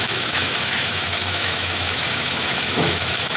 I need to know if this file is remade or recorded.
remade